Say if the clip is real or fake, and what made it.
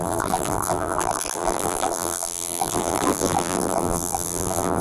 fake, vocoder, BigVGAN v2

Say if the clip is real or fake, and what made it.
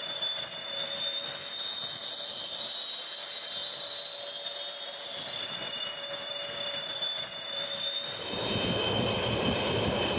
fake, vocoder, BigVGAN v2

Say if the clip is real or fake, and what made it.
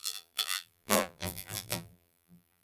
fake, vocoder, BigVGAN v2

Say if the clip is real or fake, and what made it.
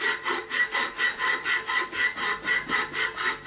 real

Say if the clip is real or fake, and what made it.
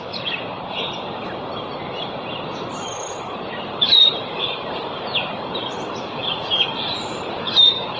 fake, vocoder, BigVGAN v2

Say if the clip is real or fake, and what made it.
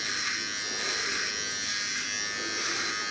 real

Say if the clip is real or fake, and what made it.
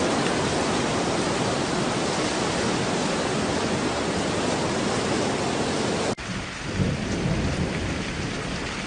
real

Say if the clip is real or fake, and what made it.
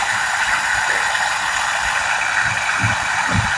real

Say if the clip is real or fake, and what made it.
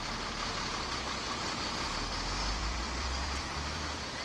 fake, vocoder, BigVGAN v2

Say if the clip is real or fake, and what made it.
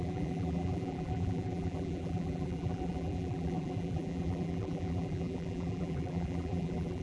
fake, vocoder, BigVGAN v2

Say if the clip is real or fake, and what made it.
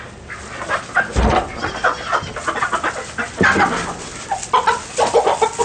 real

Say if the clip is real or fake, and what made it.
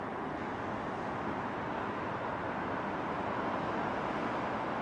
real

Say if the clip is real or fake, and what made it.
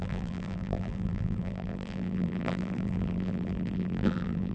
fake, vocoder, BigVGAN v2